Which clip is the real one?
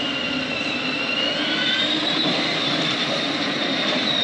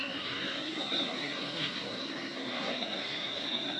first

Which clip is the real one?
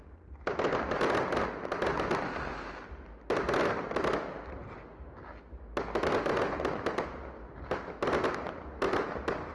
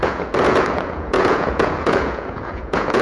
first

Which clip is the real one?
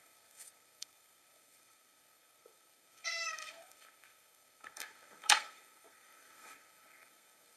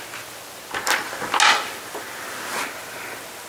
second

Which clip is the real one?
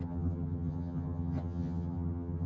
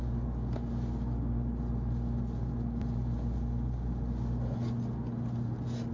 second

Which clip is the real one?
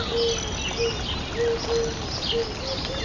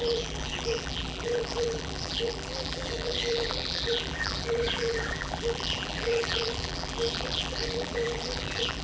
first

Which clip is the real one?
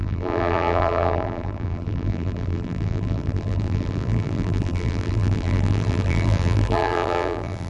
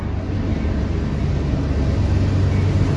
second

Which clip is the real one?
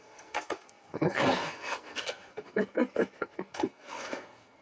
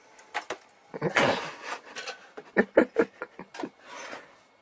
second